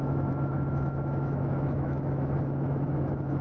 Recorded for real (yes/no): no